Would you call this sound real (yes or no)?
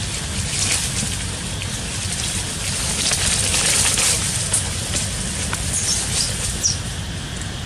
yes